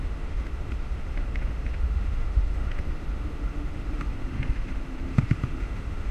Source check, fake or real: fake